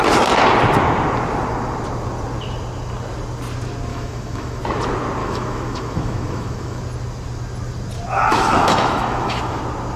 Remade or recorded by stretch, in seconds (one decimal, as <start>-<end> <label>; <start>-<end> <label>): 0.0-3.9 recorded; 3.9-4.6 remade; 4.6-5.2 recorded; 5.2-6.8 remade; 6.8-8.3 recorded; 8.3-9.6 remade; 9.6-10.0 recorded